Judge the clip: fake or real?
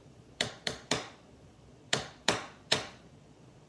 fake